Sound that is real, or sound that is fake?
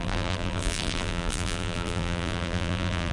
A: fake